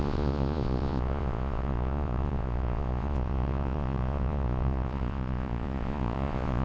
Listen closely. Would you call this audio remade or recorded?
remade